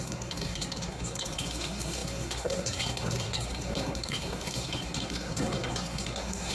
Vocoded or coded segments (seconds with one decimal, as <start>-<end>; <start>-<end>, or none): 0.0-6.5